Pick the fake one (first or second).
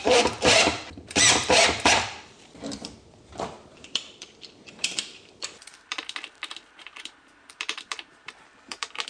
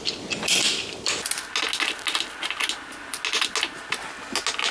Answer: first